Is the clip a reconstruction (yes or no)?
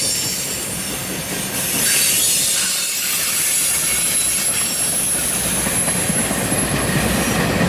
no